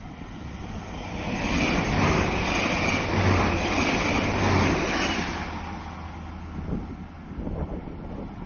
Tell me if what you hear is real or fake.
real